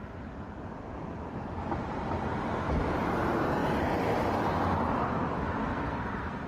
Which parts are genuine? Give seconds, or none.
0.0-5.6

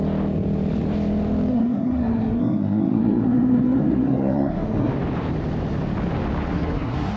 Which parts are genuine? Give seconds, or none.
0.0-1.5; 4.9-6.5

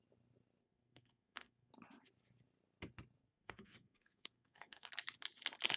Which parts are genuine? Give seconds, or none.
0.0-0.6; 1.7-3.2; 4.9-5.8

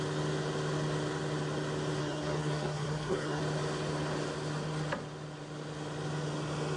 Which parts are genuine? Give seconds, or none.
0.0-2.0; 3.4-6.8

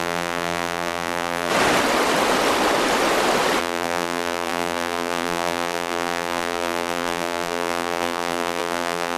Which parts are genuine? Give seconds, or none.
1.5-3.6